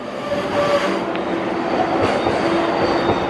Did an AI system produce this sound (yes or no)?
no